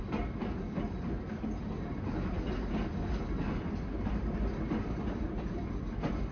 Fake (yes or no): no